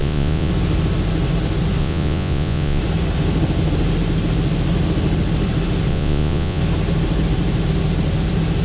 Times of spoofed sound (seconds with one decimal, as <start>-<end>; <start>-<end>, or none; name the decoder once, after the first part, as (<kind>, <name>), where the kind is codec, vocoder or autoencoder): 0.0-0.5 (vocoder, Vocos); 1.8-2.8; 5.9-6.6